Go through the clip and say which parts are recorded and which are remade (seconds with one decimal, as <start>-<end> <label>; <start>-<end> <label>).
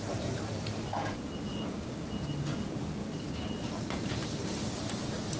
0.0-1.5 recorded; 1.5-2.1 remade; 2.1-3.0 recorded; 3.0-3.5 remade; 3.5-5.4 recorded